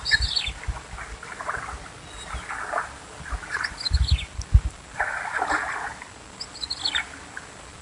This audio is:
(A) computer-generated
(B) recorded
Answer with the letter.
B